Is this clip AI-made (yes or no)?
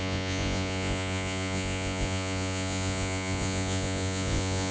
yes